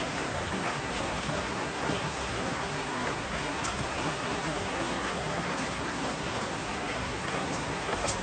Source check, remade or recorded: remade